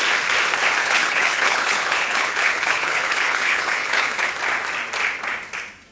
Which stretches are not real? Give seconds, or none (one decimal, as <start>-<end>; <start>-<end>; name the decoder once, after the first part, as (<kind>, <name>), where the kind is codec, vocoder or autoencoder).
0.8-4.3 (codec, HILCodec)